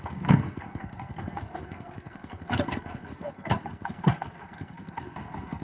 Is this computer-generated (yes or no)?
yes